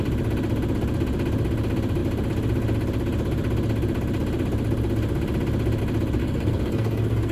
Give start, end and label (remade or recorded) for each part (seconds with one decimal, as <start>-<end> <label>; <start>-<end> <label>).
0.0-6.2 recorded; 6.2-7.3 remade